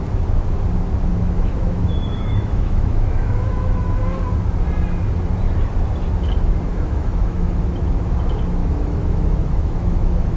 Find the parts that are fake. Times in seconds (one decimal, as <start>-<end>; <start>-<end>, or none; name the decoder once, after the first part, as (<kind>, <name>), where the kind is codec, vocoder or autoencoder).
1.1-4.0 (autoencoder, DAC-VAE); 6.7-7.6; 8.6-10.4